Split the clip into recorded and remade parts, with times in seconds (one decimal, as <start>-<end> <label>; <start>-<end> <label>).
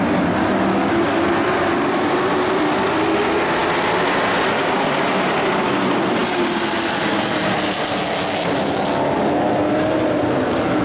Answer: 0.0-10.8 recorded